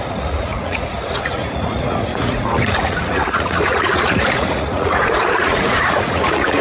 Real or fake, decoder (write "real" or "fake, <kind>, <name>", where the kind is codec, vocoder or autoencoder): fake, vocoder, Vocos